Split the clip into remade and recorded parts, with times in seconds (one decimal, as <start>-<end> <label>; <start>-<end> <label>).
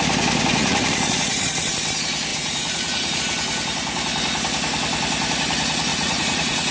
0.0-0.6 recorded; 0.6-1.7 remade; 1.7-2.3 recorded; 2.3-3.2 remade; 3.2-5.9 recorded; 5.9-6.7 remade